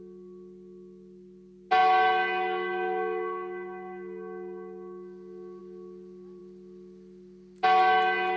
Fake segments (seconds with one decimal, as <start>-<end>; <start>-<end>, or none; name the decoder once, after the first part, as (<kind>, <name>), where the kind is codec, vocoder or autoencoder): none